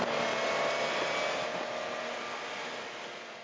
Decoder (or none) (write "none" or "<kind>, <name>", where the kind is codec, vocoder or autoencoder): none